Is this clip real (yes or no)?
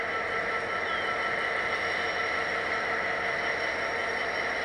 yes